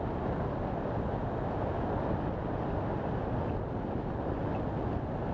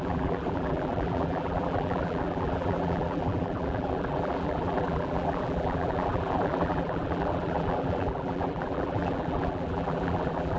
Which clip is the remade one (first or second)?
second